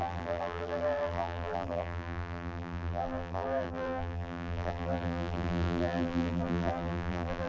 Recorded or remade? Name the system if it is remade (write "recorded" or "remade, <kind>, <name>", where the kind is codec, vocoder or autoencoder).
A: remade, vocoder, BigVGAN v2